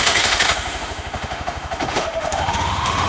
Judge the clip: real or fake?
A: fake